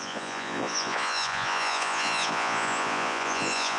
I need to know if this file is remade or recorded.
remade